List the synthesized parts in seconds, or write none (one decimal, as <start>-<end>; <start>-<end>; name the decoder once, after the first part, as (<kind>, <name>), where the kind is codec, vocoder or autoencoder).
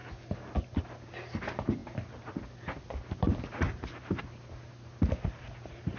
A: none